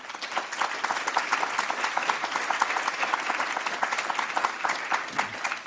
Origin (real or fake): real